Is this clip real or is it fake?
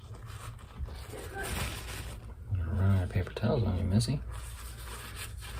real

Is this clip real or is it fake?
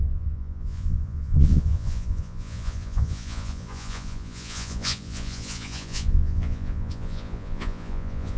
fake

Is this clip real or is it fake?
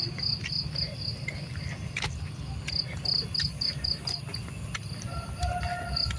real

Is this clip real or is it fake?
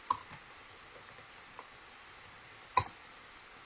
real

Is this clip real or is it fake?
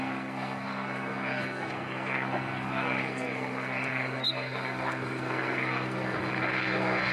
fake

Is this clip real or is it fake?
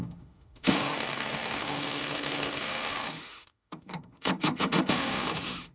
fake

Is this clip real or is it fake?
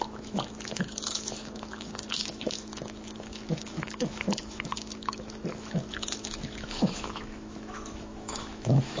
fake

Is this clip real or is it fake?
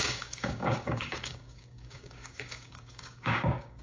fake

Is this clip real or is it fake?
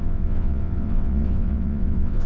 fake